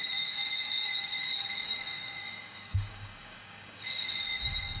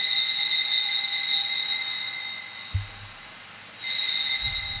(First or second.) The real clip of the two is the second